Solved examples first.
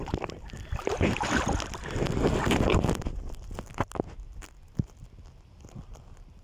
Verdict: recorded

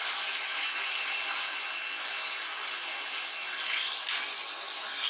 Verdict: recorded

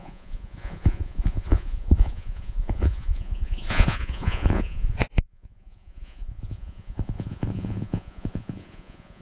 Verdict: remade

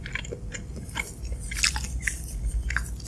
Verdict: recorded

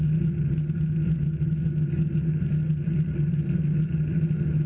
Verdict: recorded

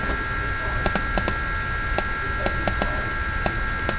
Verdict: recorded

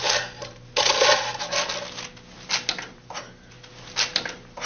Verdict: recorded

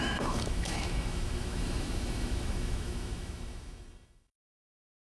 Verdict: remade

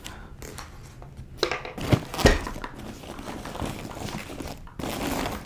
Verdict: recorded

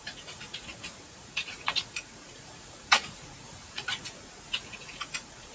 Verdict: remade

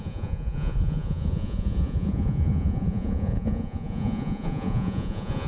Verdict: remade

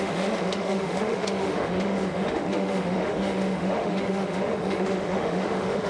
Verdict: remade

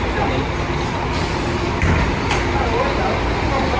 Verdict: recorded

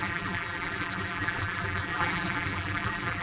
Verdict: remade